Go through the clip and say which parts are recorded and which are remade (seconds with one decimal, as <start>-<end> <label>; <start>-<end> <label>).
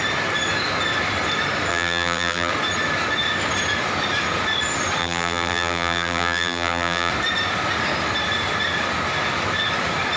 0.0-1.7 recorded; 1.7-2.5 remade; 2.5-5.0 recorded; 5.0-7.1 remade; 7.1-10.2 recorded